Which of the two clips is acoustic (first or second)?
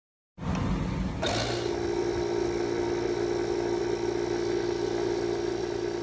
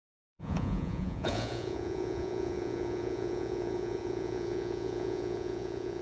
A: first